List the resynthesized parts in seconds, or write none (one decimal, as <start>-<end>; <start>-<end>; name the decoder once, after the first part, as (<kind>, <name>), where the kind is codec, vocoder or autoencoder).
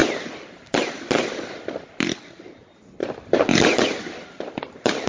none